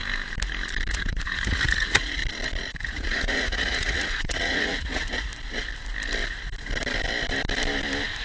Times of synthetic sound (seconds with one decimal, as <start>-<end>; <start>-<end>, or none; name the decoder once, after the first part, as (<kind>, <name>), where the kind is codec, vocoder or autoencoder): 0.9-2.2 (vocoder, Vocos); 2.8-5.3